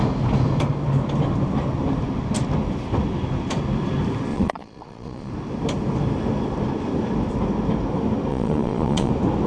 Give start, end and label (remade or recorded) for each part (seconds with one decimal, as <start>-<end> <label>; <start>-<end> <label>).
0.0-4.3 recorded; 4.3-5.3 remade; 5.3-8.3 recorded; 8.3-9.1 remade; 9.1-9.5 recorded